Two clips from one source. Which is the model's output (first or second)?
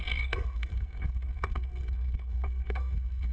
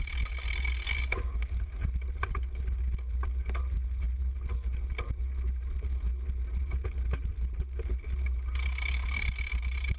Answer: first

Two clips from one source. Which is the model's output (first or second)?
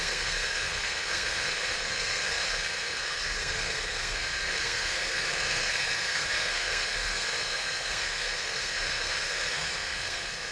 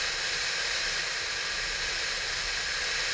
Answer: first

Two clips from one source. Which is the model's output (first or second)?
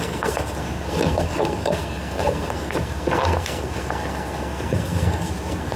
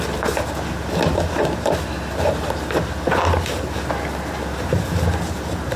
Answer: first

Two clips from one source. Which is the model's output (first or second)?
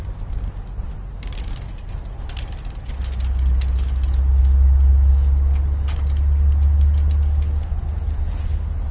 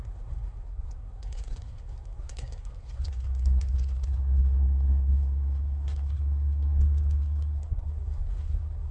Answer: second